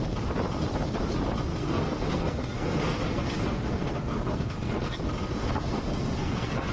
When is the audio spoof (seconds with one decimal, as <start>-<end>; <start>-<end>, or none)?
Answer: 1.5-5.0; 5.4-6.7